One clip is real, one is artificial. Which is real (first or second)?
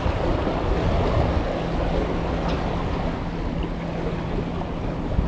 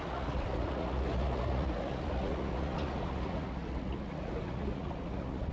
first